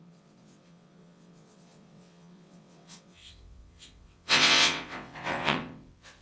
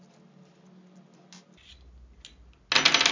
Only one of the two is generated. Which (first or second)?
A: first